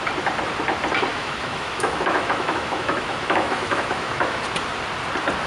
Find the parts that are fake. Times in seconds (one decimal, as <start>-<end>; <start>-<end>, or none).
1.1-4.4